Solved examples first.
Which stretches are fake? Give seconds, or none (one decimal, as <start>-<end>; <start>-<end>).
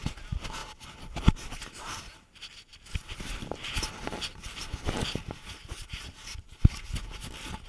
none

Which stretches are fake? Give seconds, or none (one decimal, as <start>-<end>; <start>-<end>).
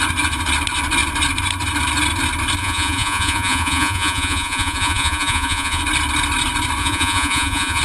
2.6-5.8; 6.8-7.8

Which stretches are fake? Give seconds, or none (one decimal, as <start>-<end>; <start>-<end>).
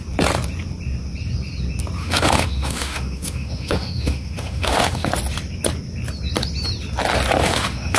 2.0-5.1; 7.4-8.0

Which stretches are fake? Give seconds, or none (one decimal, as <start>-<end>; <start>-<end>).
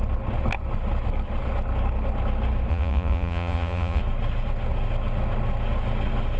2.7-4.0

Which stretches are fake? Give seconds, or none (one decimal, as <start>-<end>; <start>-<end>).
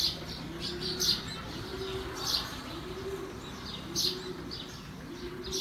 none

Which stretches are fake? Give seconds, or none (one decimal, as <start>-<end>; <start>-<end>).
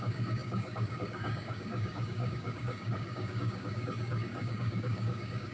0.0-5.5